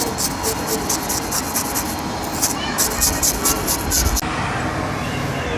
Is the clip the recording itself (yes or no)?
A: yes